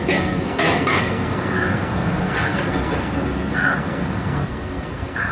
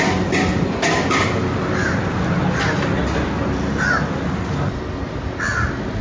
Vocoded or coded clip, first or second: first